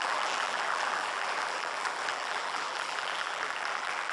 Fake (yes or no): yes